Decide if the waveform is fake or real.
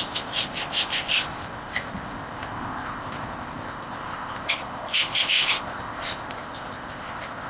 fake